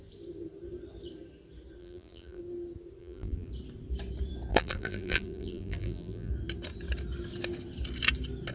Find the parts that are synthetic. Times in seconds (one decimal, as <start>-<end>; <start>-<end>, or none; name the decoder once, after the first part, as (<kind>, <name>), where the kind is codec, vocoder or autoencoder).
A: 1.8-2.4 (vocoder, BigVGAN v2); 3.0-3.5; 4.5-6.3